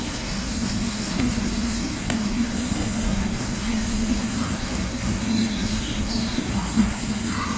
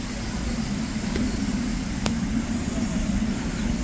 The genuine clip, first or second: second